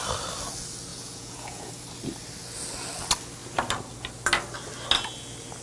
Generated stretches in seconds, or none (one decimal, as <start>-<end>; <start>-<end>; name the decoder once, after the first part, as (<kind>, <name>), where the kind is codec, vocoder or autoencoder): 0.9-1.7 (vocoder, Vocos)